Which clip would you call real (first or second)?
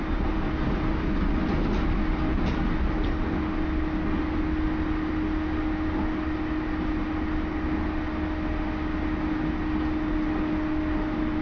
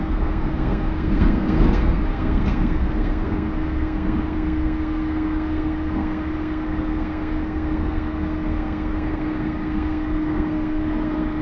first